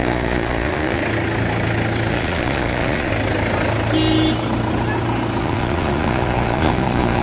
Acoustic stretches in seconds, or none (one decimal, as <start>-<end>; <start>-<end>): 1.0-2.1; 3.1-5.4